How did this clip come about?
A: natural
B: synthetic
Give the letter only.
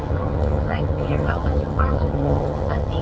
B